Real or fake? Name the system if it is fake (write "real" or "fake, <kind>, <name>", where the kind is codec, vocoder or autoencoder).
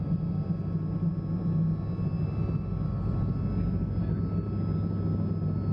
real